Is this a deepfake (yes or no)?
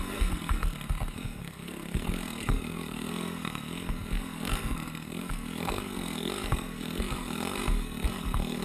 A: yes